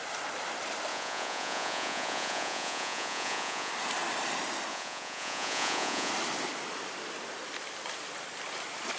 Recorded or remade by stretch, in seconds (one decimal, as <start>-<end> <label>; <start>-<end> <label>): 0.0-0.9 recorded; 0.9-3.7 remade; 3.7-4.7 recorded; 4.7-6.1 remade; 6.1-9.0 recorded